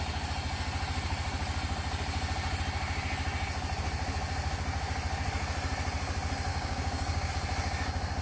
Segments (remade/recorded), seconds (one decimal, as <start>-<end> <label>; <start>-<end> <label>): 0.0-6.5 recorded; 6.5-7.3 remade; 7.3-8.2 recorded